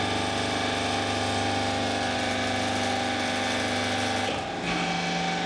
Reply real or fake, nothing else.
real